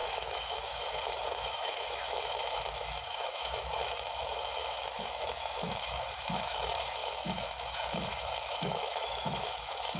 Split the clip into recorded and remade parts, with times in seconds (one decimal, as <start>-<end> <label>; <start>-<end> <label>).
0.0-10.0 remade